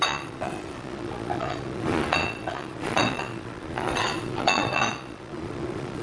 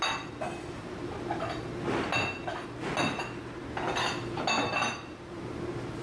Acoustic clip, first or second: second